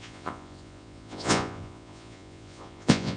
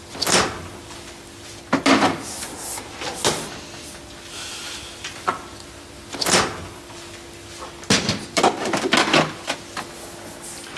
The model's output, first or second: first